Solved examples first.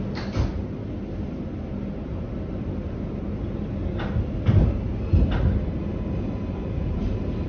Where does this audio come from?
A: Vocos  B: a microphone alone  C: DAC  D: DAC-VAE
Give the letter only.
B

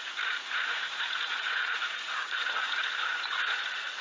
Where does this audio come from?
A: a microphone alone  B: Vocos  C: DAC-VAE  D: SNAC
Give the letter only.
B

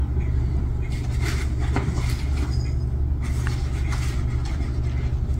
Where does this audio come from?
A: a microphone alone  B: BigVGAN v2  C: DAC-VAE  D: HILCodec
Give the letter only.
A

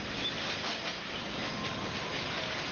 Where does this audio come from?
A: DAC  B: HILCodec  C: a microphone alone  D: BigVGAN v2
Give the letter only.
C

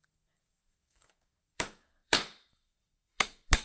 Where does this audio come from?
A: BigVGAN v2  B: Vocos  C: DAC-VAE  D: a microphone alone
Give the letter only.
C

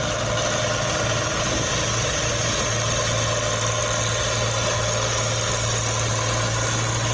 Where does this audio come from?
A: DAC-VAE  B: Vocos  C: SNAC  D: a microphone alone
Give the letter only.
D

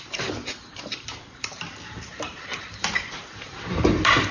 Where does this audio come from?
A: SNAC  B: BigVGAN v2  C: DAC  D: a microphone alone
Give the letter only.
B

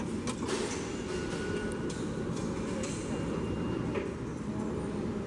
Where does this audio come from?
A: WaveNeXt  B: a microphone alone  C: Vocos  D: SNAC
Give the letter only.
B